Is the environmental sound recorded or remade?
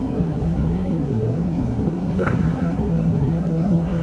remade